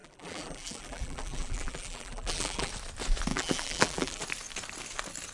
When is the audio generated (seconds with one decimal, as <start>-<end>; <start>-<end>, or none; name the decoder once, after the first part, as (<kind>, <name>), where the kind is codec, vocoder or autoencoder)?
0.0-2.7 (vocoder, BigVGAN v2); 3.3-4.2